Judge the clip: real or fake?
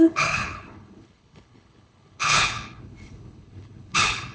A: fake